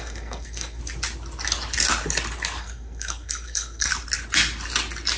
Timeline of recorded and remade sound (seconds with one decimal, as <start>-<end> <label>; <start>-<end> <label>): 0.0-0.8 remade; 0.8-2.6 recorded; 2.6-3.9 remade; 3.9-5.2 recorded